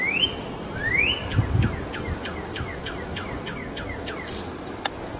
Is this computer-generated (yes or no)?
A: no